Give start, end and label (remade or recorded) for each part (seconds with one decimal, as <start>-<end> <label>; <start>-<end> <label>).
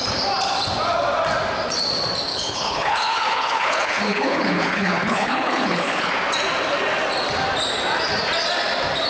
0.0-2.3 recorded; 2.3-6.1 remade; 6.1-9.1 recorded